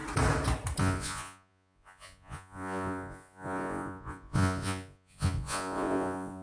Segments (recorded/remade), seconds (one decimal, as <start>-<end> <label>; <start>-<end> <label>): 0.0-0.8 recorded; 0.8-6.4 remade